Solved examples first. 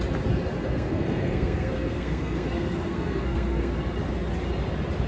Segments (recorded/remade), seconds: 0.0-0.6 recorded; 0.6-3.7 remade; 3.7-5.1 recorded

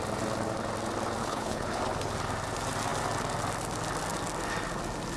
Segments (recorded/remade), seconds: 0.0-1.2 recorded; 1.2-1.8 remade; 1.8-5.2 recorded

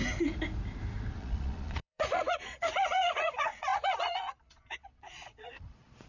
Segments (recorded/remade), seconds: 0.0-1.2 recorded; 1.2-6.1 remade

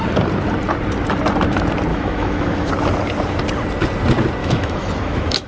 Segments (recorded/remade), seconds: 0.0-1.9 recorded; 1.9-2.7 remade; 2.7-4.4 recorded; 4.4-5.5 remade

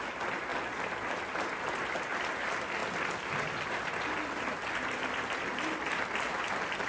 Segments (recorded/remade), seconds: 0.0-6.9 recorded

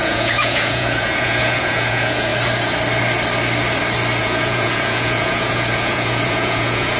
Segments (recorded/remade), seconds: 0.0-2.3 remade; 2.3-4.2 recorded; 4.2-7.0 remade